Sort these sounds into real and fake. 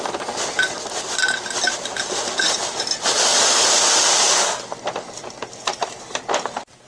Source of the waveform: real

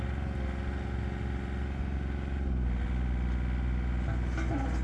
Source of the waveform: real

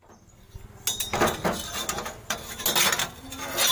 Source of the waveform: real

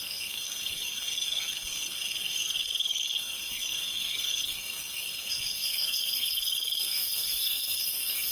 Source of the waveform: fake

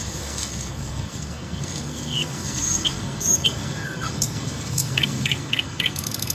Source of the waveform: fake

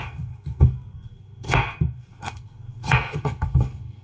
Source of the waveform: fake